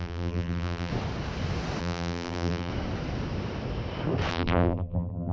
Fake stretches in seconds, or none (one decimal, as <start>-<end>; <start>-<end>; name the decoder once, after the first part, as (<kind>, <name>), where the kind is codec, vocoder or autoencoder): 0.0-0.9 (vocoder, BigVGAN v2); 1.8-2.7; 4.3-5.3